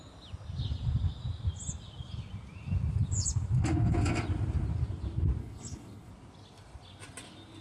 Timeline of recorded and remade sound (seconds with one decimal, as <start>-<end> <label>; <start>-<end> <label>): 0.0-5.4 recorded; 5.4-6.1 remade; 6.1-7.6 recorded